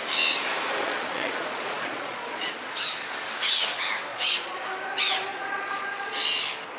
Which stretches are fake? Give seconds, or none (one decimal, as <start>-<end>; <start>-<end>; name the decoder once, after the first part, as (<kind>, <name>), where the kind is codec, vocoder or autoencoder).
0.8-2.5 (vocoder, Vocos); 4.1-4.6; 5.3-6.1